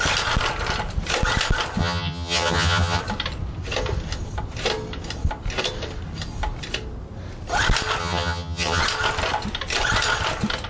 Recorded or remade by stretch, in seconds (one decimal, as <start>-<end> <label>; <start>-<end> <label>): 0.0-1.8 recorded; 1.8-3.0 remade; 3.0-8.0 recorded; 8.0-8.8 remade; 8.8-10.7 recorded